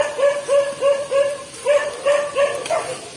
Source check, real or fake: fake